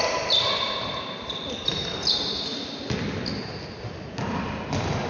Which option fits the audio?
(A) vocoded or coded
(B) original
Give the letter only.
B